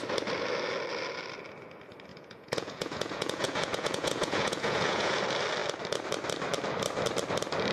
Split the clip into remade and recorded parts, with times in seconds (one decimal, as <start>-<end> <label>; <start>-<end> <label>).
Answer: 0.0-2.1 recorded; 2.1-5.1 remade; 5.1-7.7 recorded